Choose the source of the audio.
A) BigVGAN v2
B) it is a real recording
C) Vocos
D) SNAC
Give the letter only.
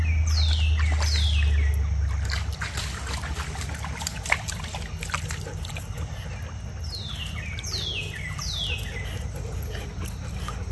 B